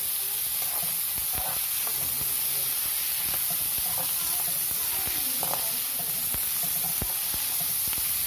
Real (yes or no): yes